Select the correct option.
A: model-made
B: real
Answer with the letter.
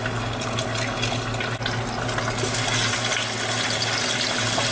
B